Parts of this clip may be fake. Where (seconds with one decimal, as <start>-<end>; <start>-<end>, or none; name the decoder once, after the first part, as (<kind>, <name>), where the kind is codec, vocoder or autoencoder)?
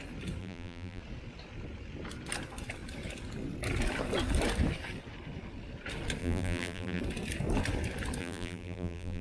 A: 0.4-1.0 (vocoder, BigVGAN v2); 6.2-7.0; 8.2-9.2